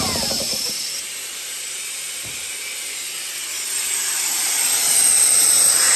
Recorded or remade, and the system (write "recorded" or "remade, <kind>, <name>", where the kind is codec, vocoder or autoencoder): recorded